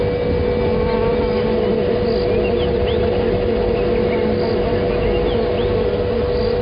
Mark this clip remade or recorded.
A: recorded